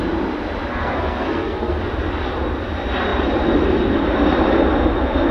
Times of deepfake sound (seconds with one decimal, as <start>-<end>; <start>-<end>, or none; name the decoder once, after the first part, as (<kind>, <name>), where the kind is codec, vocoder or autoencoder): 0.7-1.8 (codec, SNAC)